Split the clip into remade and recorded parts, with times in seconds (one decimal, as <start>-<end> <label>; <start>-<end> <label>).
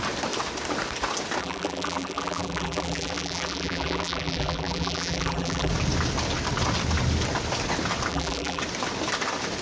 0.0-1.4 recorded; 1.4-5.7 remade; 5.7-8.1 recorded; 8.1-8.6 remade; 8.6-9.6 recorded